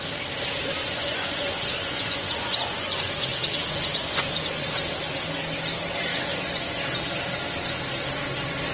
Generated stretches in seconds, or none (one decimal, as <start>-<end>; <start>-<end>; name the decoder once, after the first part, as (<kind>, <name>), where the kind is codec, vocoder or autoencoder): 0.8-4.8 (vocoder, Vocos); 6.1-7.0